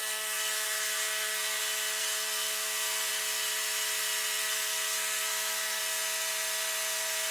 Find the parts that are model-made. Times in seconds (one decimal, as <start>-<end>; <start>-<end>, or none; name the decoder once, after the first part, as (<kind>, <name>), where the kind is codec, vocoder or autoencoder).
0.0-1.6 (codec, SNAC); 2.0-3.1; 4.4-5.8